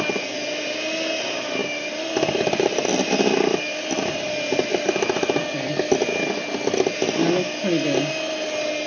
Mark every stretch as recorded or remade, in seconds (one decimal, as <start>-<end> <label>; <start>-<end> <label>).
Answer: 0.0-1.6 recorded; 1.6-3.6 remade; 3.6-4.7 recorded; 4.7-5.4 remade; 5.4-8.9 recorded

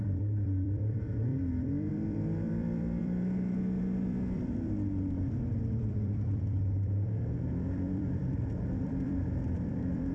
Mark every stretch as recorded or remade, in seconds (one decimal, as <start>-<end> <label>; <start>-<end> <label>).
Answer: 0.0-10.1 remade

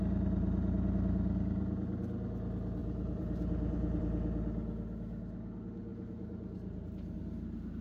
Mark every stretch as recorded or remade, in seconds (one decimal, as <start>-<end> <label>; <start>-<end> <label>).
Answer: 0.0-2.8 recorded; 2.8-4.0 remade; 4.0-5.9 recorded; 5.9-7.8 remade

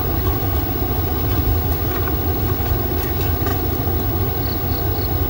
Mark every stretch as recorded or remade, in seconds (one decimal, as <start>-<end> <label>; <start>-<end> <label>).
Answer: 0.0-5.3 recorded

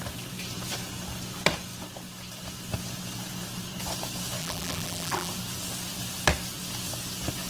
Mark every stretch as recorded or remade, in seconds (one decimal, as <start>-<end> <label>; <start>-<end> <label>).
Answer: 0.0-4.4 recorded; 4.4-5.3 remade; 5.3-7.5 recorded